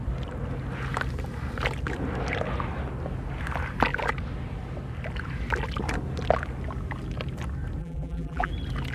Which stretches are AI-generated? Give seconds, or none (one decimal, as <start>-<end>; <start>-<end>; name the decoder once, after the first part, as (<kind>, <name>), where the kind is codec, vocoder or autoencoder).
7.8-8.5 (vocoder, BigVGAN v2)